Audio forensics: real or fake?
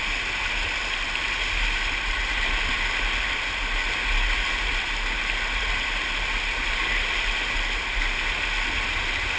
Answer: real